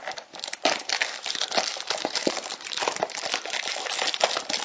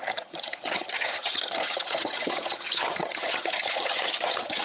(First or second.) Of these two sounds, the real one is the first